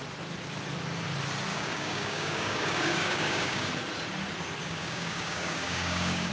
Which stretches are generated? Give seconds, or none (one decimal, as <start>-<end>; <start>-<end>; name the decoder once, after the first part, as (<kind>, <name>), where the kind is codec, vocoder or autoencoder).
1.5-3.7 (codec, DAC); 4.6-6.3